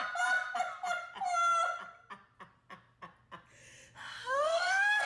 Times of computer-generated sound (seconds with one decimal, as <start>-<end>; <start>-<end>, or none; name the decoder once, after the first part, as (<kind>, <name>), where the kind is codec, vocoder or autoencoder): 4.2-5.1 (codec, SNAC)